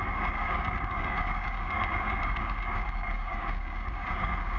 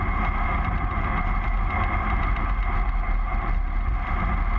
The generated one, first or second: first